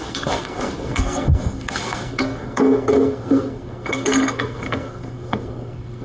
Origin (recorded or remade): remade